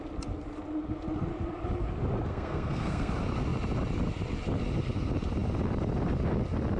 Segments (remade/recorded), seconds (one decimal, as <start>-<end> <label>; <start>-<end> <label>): 0.0-2.3 recorded; 2.3-3.1 remade; 3.1-6.8 recorded